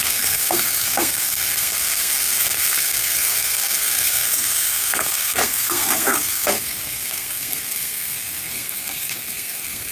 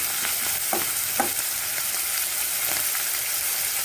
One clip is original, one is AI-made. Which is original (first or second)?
second